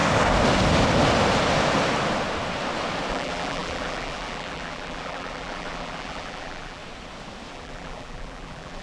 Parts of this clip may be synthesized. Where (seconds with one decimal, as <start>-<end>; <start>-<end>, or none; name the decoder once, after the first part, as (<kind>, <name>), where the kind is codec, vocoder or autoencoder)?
3.1-6.8 (vocoder, BigVGAN v2); 7.5-8.8